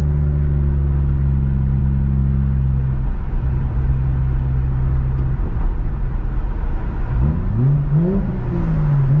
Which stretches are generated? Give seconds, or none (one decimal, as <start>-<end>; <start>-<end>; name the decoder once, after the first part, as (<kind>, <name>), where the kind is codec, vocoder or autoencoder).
none